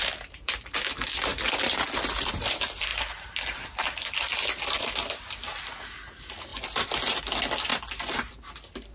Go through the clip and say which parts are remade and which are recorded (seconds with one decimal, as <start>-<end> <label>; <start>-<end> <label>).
0.0-1.3 recorded; 1.3-2.5 remade; 2.5-2.9 recorded; 2.9-3.7 remade; 3.7-6.5 recorded; 6.5-7.2 remade; 7.2-7.7 recorded; 7.7-8.3 remade; 8.3-8.9 recorded